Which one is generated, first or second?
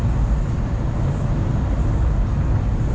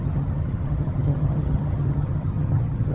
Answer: second